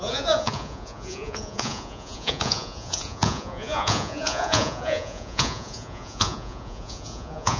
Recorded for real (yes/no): no